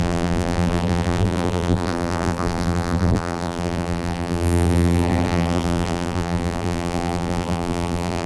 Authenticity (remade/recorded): remade